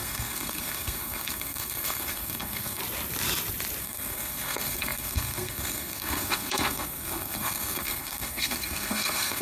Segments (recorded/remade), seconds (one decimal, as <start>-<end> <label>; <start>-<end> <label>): 0.0-2.8 remade; 2.8-3.8 recorded; 3.8-9.4 remade